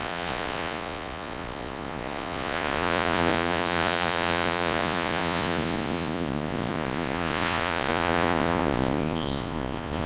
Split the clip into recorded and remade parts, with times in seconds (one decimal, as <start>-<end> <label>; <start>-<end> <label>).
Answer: 0.0-10.1 remade